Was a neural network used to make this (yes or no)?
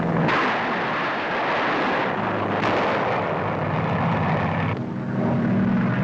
no